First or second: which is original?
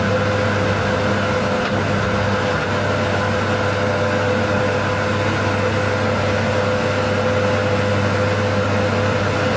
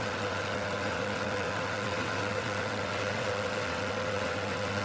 first